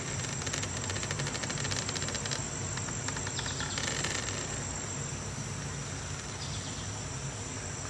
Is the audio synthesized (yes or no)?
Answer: no